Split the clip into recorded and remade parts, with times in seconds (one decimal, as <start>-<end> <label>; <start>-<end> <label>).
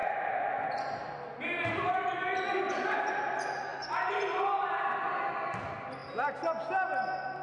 0.0-7.4 recorded